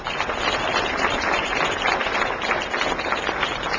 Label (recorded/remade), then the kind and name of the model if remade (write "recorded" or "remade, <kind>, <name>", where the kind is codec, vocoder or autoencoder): recorded